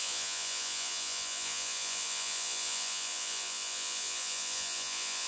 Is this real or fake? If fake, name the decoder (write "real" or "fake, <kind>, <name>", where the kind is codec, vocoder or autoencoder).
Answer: fake, vocoder, Vocos